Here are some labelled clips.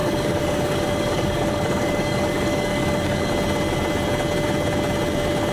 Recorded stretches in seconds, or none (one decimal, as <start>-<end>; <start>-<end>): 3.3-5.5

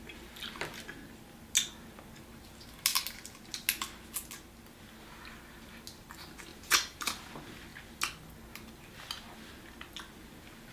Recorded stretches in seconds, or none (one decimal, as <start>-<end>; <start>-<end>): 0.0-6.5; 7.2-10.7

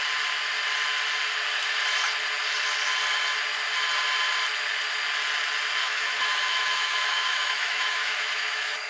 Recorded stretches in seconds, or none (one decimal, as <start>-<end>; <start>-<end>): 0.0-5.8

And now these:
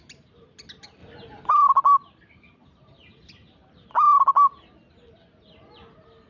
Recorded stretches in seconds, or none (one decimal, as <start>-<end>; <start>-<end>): 0.0-6.3

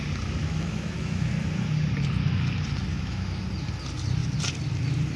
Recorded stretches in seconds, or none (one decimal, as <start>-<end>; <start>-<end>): 0.0-0.4; 1.3-2.9; 3.4-5.2